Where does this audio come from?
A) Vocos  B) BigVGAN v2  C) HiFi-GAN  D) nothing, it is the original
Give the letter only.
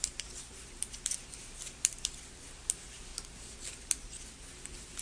D